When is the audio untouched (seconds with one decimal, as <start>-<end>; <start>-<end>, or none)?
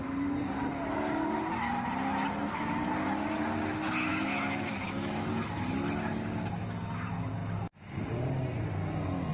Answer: 0.0-4.1; 5.3-9.3